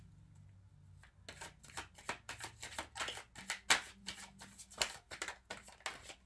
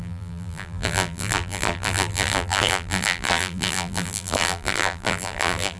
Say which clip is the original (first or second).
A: first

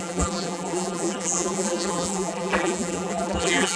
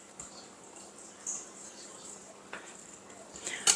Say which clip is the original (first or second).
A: second